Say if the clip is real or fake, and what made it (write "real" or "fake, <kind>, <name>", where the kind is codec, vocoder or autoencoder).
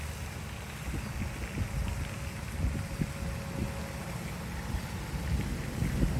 real